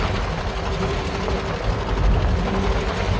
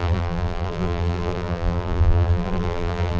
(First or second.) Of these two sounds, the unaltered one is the first